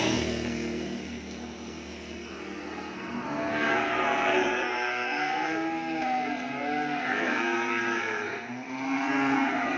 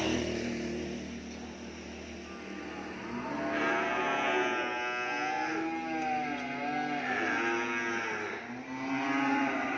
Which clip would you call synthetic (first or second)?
first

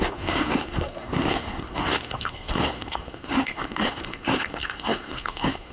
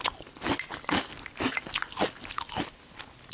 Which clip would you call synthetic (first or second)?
first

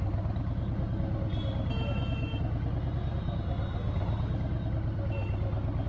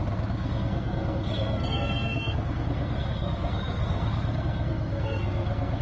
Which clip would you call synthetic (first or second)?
second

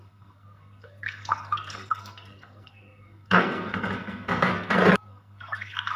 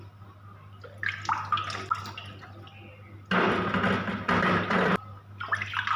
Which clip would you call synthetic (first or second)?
first